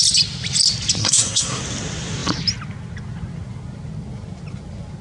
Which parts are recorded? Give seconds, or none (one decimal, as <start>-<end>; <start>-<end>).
0.0-1.0; 1.6-5.0